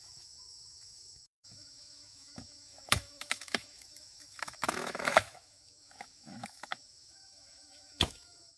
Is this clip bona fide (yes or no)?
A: no